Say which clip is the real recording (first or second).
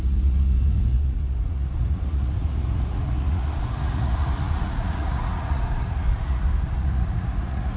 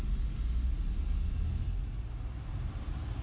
second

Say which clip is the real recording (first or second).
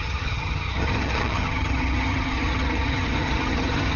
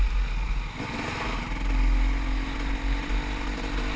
second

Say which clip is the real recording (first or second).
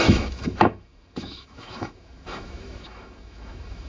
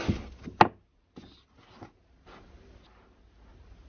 second